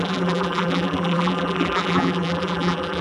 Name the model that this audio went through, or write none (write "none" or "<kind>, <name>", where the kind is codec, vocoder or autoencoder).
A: vocoder, BigVGAN v2